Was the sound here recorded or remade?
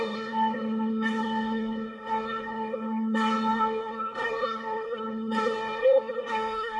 remade